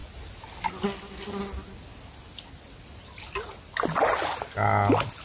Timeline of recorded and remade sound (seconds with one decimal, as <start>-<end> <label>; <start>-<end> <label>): 0.0-5.2 recorded

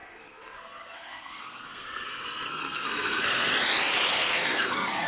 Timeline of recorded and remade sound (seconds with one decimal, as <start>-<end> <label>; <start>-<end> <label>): 0.0-3.5 remade; 3.5-4.1 recorded; 4.1-5.1 remade

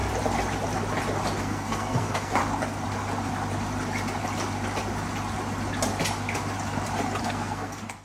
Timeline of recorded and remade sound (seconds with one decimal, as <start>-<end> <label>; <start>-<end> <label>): 0.0-1.4 recorded; 1.4-2.4 remade; 2.4-7.2 recorded; 7.2-8.0 remade

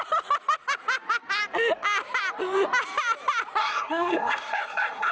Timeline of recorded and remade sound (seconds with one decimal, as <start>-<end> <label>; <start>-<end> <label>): 0.0-3.6 recorded; 3.6-5.1 remade

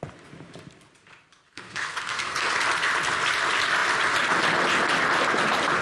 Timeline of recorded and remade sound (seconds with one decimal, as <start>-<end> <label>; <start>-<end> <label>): 0.0-1.5 recorded; 1.5-2.5 remade; 2.5-5.8 recorded

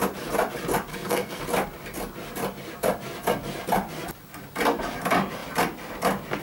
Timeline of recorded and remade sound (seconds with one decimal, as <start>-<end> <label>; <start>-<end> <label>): 0.0-0.9 recorded; 0.9-1.4 remade; 1.4-6.4 recorded